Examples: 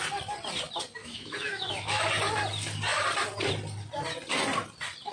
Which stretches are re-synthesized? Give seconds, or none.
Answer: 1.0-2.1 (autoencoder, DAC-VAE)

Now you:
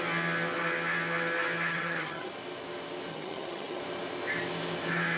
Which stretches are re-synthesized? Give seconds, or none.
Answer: 1.7-2.3 (vocoder, HiFi-GAN); 3.1-3.8

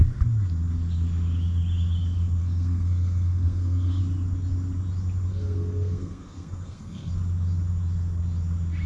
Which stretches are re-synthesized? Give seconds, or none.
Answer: 2.4-4.0 (codec, SNAC); 5.3-7.1

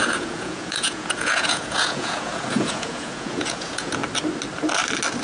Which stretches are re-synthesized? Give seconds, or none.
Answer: 0.0-4.0 (vocoder, Vocos)

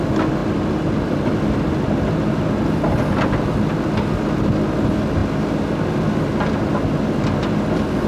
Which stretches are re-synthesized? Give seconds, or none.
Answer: 0.4-1.2 (vocoder, BigVGAN v2)

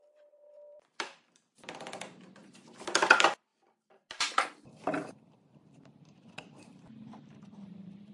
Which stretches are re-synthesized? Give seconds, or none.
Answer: 0.0-2.4 (vocoder, BigVGAN v2); 3.0-8.1

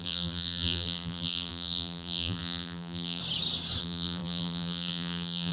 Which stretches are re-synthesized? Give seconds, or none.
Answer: 0.0-3.2 (vocoder, BigVGAN v2); 3.8-5.5